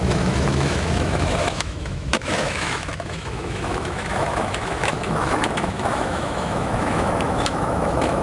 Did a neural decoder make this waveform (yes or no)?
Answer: yes